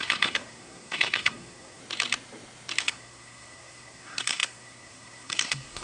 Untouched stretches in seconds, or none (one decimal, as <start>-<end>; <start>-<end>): 1.8-2.8